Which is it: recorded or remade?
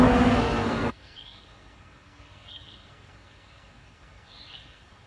remade